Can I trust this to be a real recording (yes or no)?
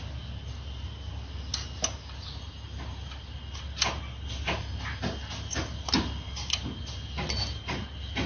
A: yes